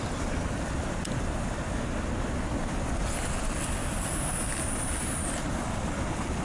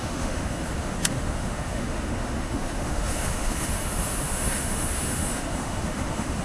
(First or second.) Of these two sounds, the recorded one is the first